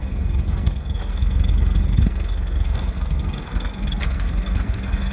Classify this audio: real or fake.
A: fake